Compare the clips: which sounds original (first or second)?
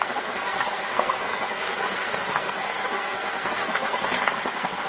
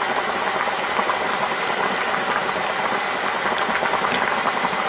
second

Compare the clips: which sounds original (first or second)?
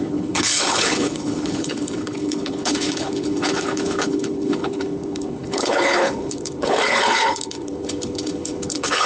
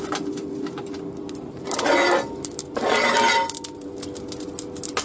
second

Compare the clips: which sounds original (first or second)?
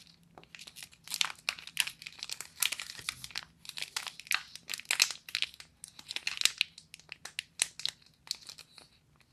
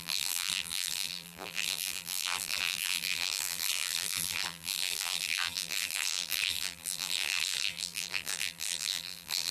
first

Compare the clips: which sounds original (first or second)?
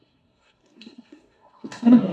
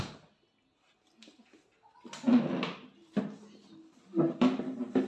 second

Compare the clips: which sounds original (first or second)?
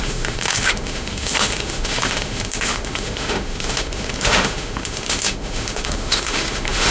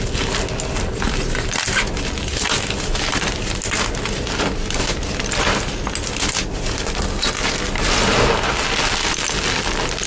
second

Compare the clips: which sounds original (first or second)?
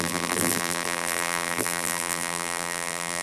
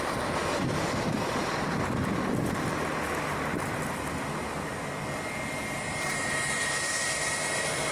second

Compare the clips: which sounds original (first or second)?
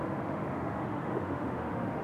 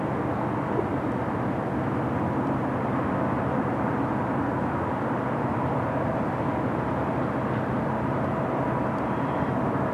second